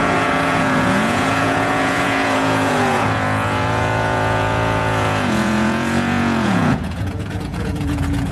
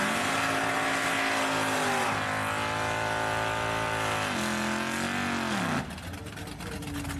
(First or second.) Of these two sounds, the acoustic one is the second